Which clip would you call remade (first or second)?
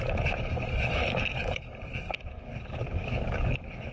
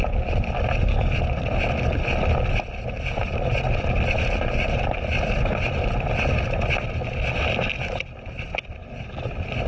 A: first